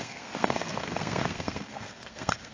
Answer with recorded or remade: remade